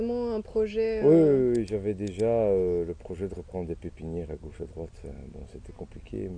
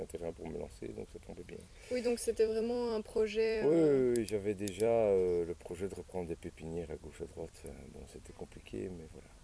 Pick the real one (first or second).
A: first